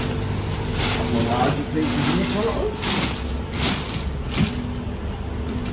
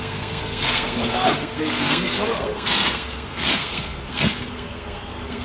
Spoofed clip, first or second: second